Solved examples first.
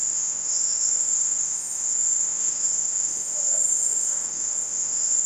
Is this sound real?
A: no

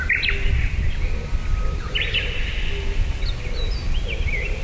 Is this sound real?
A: yes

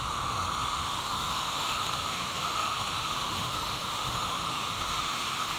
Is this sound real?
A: no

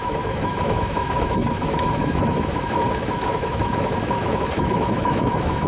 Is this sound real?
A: no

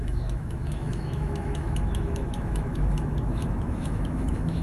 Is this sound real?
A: no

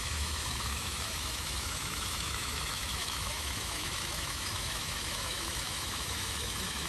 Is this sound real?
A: no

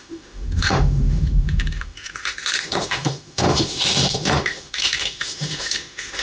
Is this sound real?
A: no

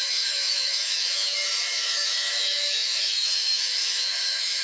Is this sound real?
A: no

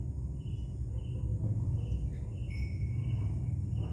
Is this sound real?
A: yes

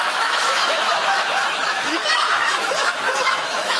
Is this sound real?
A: no